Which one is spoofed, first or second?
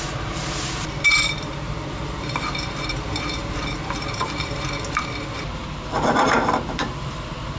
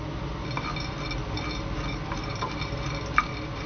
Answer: first